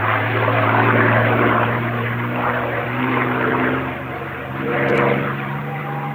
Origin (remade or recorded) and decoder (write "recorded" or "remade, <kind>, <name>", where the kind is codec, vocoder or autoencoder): remade, vocoder, BigVGAN v2